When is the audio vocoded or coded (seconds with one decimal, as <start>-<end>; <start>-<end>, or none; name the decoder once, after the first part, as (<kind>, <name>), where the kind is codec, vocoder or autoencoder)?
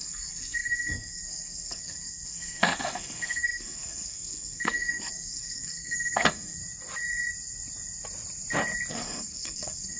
0.0-6.6 (codec, SNAC); 8.9-10.0